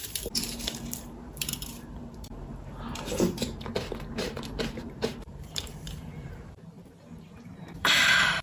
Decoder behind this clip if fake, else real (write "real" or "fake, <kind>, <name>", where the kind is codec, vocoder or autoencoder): fake, vocoder, BigVGAN v2